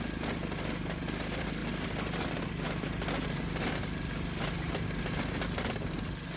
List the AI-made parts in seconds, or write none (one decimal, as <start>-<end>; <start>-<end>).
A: none